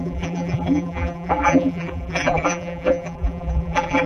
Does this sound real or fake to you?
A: fake